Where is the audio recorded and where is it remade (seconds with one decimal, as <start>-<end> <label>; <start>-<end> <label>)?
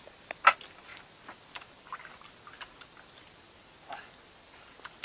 0.0-5.0 recorded